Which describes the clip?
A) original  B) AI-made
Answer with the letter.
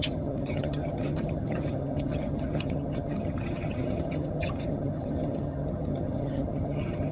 B